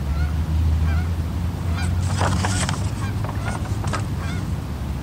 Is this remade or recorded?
recorded